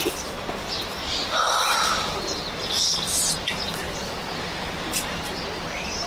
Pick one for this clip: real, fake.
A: real